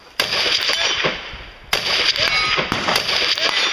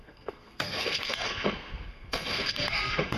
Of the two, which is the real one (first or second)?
first